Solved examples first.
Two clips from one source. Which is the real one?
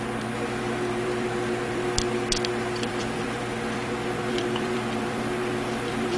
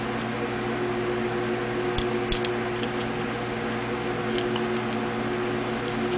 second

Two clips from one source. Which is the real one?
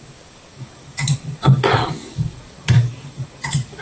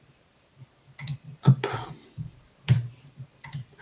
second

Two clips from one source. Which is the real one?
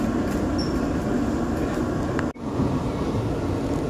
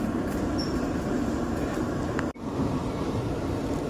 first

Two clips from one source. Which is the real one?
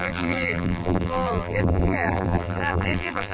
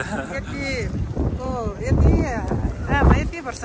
second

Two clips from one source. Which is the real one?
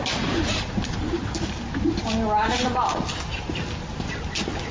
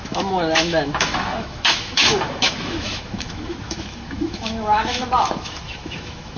first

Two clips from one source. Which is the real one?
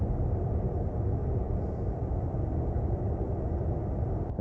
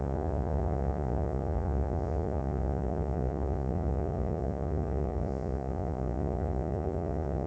first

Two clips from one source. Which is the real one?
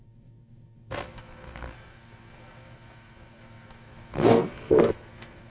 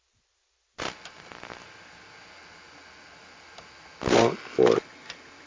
second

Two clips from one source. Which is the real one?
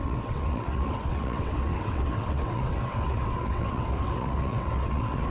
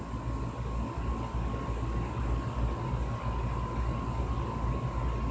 second